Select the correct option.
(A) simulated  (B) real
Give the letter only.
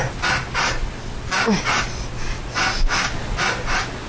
B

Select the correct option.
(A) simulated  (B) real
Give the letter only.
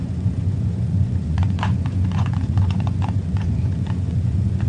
A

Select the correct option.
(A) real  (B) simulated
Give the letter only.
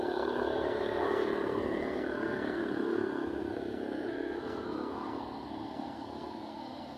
B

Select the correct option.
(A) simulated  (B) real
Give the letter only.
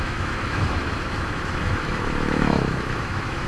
A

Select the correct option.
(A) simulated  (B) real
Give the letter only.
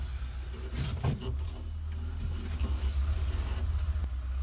B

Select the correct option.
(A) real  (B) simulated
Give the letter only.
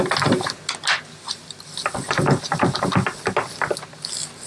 A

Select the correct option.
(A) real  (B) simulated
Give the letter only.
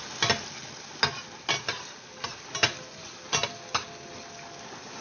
A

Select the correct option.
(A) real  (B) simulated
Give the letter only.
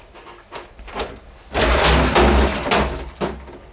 A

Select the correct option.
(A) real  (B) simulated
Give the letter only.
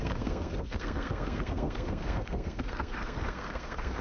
B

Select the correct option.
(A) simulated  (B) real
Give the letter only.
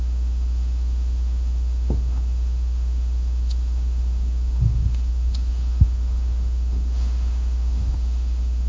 A